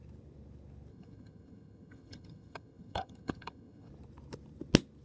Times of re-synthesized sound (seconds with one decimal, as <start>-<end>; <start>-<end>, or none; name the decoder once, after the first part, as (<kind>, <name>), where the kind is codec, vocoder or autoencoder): 0.9-3.9 (vocoder, HiFi-GAN)